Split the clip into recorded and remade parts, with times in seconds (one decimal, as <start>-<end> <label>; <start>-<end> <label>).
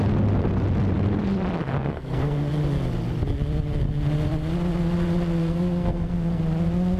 0.0-1.7 recorded; 1.7-2.5 remade; 2.5-5.4 recorded; 5.4-6.4 remade; 6.4-7.0 recorded